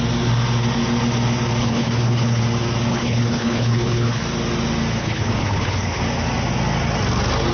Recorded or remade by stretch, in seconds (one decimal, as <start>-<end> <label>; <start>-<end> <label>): 0.0-1.6 recorded; 1.6-2.4 remade; 2.4-2.9 recorded; 2.9-4.2 remade; 4.2-5.0 recorded; 5.0-6.0 remade; 6.0-7.5 recorded